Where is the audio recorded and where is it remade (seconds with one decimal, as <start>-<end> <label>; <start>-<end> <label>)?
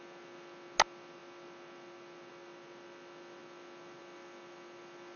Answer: 0.0-5.2 recorded